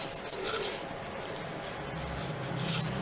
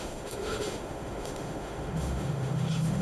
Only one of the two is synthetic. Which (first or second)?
second